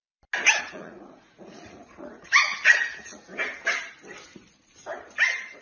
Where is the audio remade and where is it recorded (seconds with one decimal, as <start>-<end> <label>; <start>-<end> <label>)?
0.0-0.6 recorded; 0.6-3.3 remade; 3.3-5.6 recorded